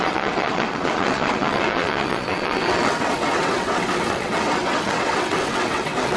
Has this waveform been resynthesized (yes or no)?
yes